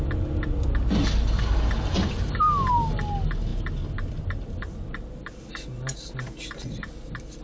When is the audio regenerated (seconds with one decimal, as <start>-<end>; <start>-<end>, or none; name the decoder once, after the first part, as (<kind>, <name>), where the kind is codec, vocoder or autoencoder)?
none